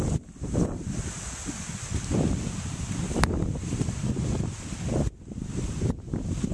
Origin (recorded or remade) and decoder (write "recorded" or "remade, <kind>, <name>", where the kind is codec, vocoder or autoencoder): recorded